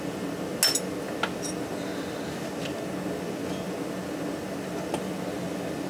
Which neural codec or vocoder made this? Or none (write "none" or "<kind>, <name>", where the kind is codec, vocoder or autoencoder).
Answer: none